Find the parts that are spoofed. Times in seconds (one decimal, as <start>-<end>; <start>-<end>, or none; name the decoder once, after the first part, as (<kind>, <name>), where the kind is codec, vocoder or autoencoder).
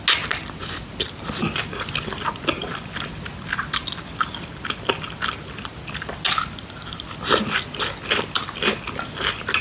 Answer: none